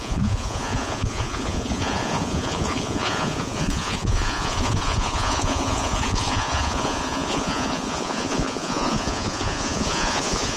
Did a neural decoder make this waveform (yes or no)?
yes